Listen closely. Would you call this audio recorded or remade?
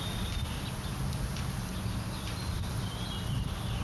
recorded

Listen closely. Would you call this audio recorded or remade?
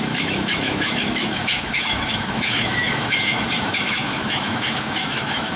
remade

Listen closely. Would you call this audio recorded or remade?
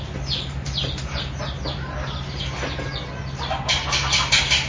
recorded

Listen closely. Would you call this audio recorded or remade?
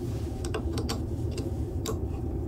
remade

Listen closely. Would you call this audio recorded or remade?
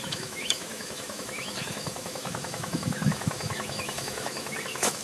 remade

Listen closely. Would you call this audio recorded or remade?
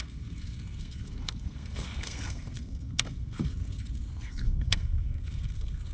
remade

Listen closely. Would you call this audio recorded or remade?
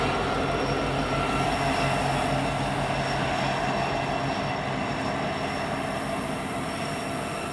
recorded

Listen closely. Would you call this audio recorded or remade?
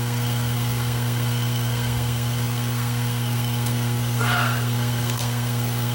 remade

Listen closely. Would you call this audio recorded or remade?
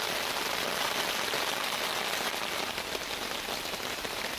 recorded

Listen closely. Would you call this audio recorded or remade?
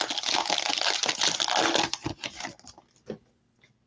recorded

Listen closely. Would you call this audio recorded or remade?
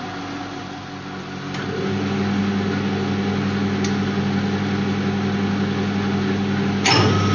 recorded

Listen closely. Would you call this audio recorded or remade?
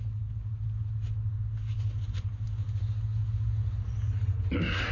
recorded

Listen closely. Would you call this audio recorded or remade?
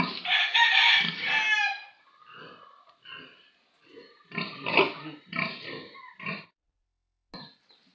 recorded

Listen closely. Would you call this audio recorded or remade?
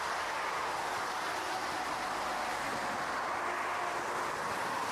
recorded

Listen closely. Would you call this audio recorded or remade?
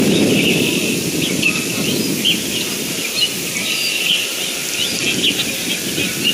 recorded